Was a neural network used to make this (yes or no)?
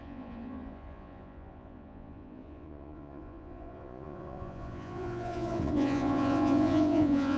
yes